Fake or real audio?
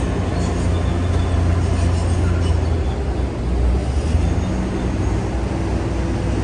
real